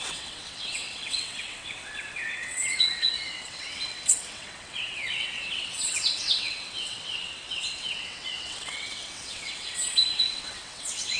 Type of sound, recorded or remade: remade